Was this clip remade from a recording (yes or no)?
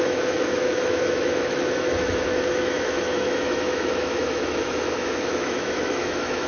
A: yes